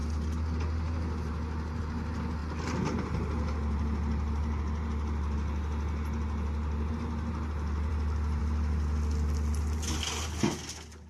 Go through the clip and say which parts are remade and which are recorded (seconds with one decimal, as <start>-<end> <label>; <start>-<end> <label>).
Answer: 0.0-11.1 recorded